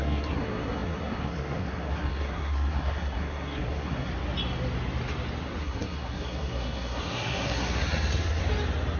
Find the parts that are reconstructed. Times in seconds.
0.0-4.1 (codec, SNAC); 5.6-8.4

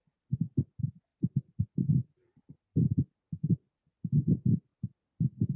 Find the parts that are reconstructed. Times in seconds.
none

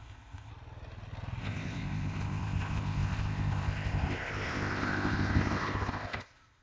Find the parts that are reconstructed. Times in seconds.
0.0-0.5 (codec, ZipCodec); 1.4-6.6